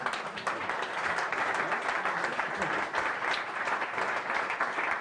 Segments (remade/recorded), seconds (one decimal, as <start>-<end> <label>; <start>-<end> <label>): 0.0-5.0 recorded